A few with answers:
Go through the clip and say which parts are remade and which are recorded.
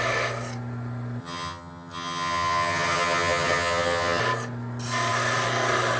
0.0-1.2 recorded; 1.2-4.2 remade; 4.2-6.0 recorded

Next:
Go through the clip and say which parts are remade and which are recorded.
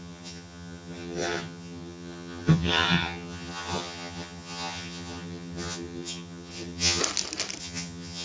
0.0-7.0 remade; 7.0-7.6 recorded; 7.6-8.2 remade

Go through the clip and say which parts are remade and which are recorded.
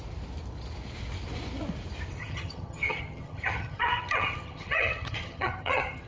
0.0-2.2 recorded; 2.2-6.1 remade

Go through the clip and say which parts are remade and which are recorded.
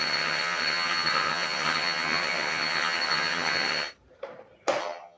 0.0-3.9 remade; 3.9-4.8 recorded; 4.8-5.2 remade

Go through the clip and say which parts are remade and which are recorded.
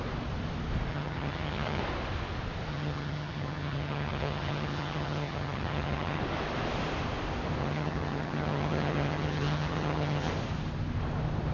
0.0-0.9 recorded; 0.9-1.8 remade; 1.8-2.7 recorded; 2.7-6.2 remade; 6.2-7.6 recorded; 7.6-10.3 remade; 10.3-11.5 recorded